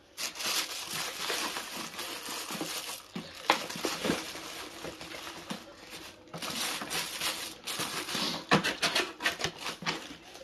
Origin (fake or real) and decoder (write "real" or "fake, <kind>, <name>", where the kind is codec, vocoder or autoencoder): real